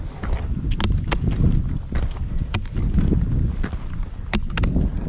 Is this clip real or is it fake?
real